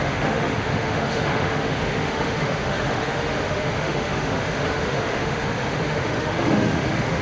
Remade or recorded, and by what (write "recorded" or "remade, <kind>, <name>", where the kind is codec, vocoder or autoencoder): remade, autoencoder, DAC-VAE